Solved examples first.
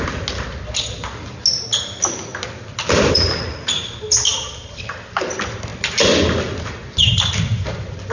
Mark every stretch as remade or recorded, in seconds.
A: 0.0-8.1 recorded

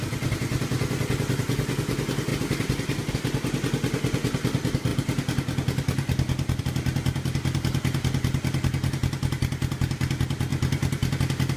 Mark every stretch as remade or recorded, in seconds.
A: 0.0-11.6 recorded

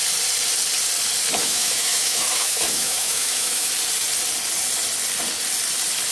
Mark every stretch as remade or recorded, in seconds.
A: 0.0-1.4 recorded; 1.4-3.7 remade; 3.7-6.1 recorded

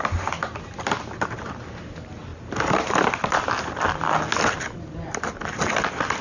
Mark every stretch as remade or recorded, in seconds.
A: 0.0-6.2 recorded

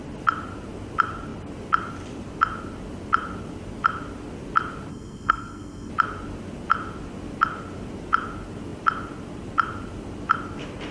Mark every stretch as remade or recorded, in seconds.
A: 0.0-4.9 recorded; 4.9-5.9 remade; 5.9-10.9 recorded

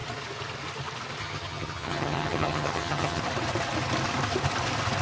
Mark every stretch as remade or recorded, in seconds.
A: 0.0-1.2 recorded; 1.2-3.2 remade; 3.2-5.0 recorded